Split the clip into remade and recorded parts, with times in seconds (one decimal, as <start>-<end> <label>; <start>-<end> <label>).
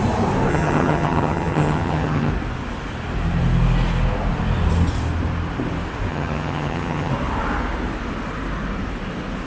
0.0-0.5 recorded; 0.5-2.3 remade; 2.3-6.1 recorded; 6.1-7.1 remade; 7.1-9.5 recorded